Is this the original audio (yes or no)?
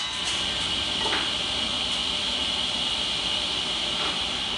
yes